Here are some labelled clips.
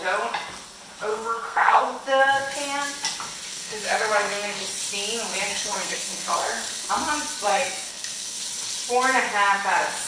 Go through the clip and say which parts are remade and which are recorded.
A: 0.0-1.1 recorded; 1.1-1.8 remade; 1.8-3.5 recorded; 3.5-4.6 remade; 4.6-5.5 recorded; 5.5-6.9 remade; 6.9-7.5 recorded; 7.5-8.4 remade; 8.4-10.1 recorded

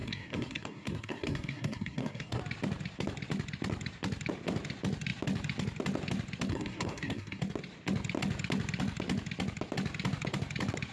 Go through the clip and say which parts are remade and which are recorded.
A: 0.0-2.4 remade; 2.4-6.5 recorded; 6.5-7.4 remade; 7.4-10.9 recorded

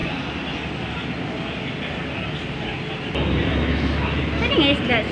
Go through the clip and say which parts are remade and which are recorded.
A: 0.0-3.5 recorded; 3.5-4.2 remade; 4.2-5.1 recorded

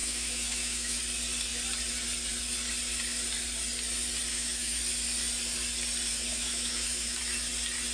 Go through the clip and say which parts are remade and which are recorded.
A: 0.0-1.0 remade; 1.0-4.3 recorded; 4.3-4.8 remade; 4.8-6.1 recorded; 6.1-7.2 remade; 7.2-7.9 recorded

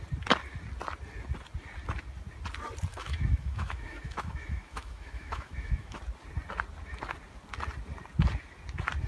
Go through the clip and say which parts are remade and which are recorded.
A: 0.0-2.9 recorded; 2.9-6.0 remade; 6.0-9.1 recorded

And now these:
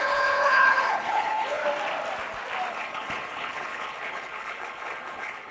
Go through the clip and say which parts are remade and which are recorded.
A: 0.0-1.6 remade; 1.6-2.7 recorded; 2.7-5.5 remade

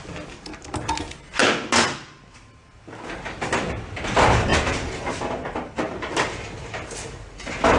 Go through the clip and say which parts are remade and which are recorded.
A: 0.0-4.5 recorded; 4.5-6.3 remade; 6.3-7.8 recorded

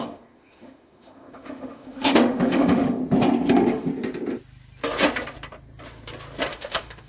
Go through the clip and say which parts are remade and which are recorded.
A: 0.0-3.0 remade; 3.0-3.5 recorded; 3.5-3.9 remade; 3.9-6.5 recorded; 6.5-7.1 remade